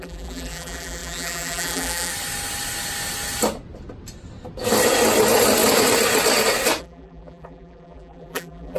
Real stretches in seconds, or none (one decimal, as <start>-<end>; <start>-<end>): 2.1-6.8